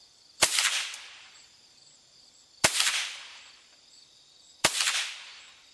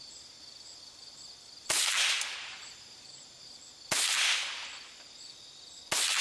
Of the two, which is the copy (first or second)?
first